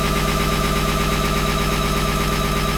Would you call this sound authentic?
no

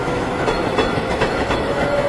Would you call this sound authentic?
no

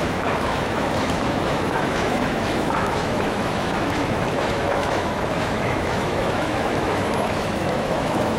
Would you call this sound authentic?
no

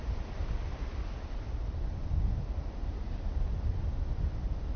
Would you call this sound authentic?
yes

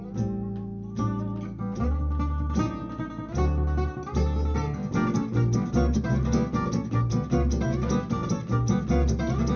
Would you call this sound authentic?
yes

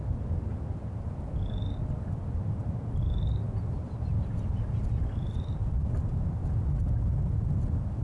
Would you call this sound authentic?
yes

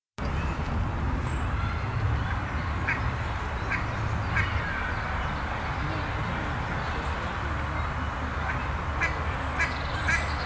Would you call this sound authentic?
yes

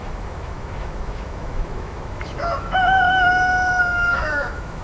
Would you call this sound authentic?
no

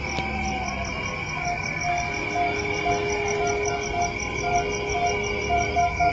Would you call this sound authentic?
yes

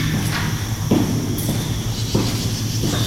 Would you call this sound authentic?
yes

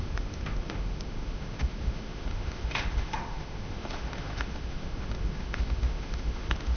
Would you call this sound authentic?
no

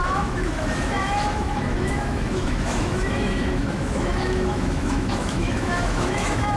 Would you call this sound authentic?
no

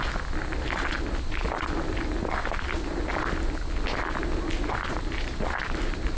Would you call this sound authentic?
yes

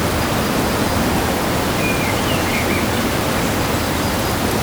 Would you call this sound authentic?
yes